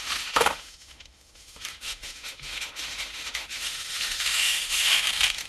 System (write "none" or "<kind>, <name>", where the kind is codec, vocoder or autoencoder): autoencoder, DAC-VAE